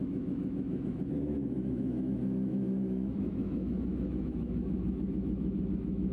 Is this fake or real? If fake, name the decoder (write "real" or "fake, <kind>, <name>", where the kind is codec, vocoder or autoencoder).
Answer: fake, autoencoder, DAC-VAE